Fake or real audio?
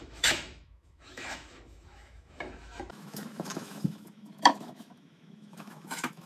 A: fake